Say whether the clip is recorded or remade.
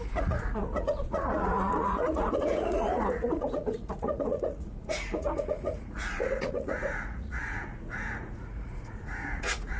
remade